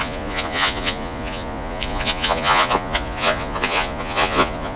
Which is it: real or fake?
fake